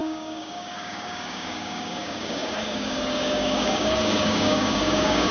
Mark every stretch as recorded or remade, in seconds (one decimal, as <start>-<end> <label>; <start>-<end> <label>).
0.0-5.3 remade